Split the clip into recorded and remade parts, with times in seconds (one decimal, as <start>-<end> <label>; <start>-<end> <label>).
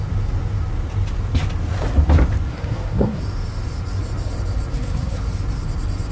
0.0-2.5 recorded; 2.5-3.2 remade; 3.2-4.7 recorded; 4.7-5.2 remade; 5.2-6.1 recorded